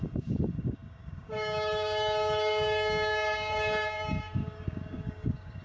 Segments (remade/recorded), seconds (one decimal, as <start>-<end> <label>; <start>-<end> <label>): 0.0-5.6 remade